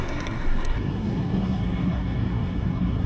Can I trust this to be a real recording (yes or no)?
no